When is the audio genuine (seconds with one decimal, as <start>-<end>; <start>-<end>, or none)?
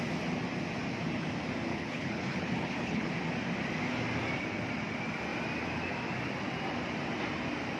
0.0-1.7; 3.1-7.8